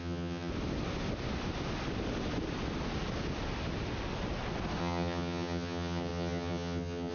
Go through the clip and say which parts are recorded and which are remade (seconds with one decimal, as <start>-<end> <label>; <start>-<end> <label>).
0.0-0.5 remade; 0.5-4.8 recorded; 4.8-7.1 remade